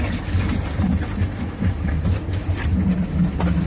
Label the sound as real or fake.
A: real